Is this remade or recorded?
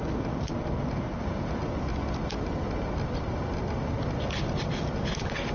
recorded